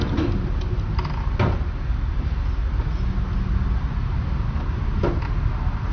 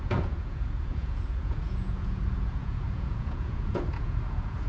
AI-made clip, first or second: second